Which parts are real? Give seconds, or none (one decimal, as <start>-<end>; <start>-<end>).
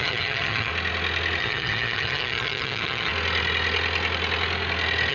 0.7-1.4; 3.1-5.1